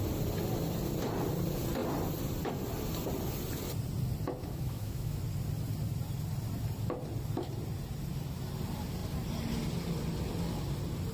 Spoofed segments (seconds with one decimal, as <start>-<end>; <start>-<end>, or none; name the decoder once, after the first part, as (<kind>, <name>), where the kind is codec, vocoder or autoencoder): 4.4-5.2 (autoencoder, DAC-VAE)